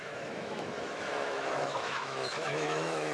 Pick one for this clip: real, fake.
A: fake